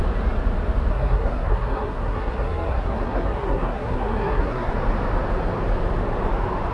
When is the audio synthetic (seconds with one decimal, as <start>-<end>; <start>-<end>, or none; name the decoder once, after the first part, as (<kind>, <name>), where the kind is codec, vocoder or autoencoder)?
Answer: 0.9-4.7 (codec, SNAC)